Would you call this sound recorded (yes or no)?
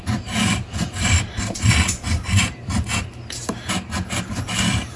no